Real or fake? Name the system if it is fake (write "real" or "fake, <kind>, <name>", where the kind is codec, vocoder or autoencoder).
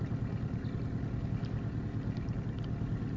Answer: real